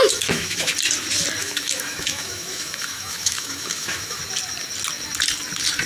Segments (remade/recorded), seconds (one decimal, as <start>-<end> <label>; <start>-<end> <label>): 0.0-0.7 remade; 0.7-1.4 recorded; 1.4-4.2 remade; 4.2-5.9 recorded